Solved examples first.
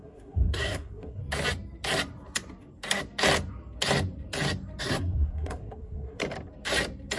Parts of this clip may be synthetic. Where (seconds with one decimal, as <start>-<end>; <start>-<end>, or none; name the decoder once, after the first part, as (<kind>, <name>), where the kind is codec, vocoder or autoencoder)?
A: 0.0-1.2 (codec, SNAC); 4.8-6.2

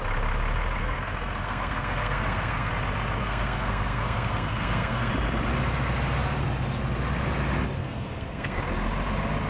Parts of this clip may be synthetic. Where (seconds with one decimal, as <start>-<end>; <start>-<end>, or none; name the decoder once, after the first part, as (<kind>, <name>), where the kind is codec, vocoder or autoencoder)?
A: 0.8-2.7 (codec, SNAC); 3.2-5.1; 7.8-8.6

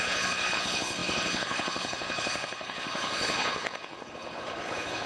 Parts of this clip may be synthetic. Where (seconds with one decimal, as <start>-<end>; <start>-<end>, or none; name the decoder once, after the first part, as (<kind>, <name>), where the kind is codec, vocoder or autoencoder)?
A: 0.0-5.1 (codec, HILCodec)

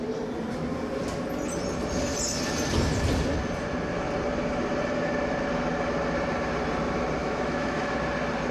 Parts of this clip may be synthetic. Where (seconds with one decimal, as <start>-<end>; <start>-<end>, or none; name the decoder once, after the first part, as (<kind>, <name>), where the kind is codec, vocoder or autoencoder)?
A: 7.2-7.9 (autoencoder, DAC-VAE)

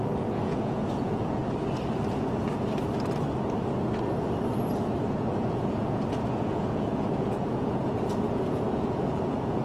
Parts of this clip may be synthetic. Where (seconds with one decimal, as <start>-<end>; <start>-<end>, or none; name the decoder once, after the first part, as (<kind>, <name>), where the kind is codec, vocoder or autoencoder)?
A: 0.0-1.4 (vocoder, Vocos); 5.3-9.6